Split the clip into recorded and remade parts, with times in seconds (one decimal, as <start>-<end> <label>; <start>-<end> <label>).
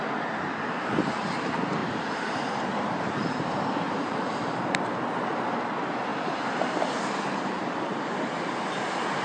0.0-1.8 recorded; 1.8-4.3 remade; 4.3-6.1 recorded; 6.1-7.6 remade; 7.6-9.2 recorded